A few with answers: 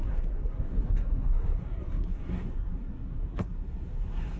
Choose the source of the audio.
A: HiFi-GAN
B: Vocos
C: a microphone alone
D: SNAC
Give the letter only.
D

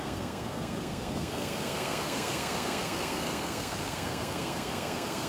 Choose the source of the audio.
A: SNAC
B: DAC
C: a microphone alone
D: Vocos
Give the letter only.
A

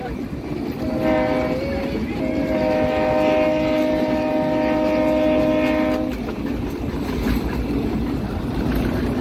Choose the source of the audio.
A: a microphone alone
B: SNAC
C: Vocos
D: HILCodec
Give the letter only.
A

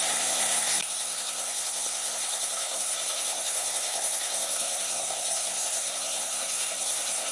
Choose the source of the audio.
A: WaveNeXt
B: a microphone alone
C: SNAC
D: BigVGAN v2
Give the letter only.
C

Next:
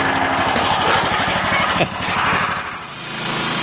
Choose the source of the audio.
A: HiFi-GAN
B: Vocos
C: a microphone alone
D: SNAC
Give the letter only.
C